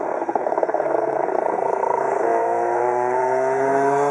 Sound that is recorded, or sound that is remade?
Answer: remade